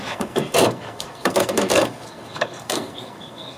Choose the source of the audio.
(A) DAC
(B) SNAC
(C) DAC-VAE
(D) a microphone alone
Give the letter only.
B